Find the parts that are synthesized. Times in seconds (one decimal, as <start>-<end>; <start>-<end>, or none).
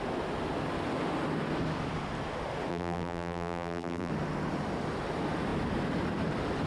2.7-4.1